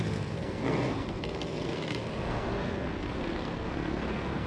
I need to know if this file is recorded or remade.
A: remade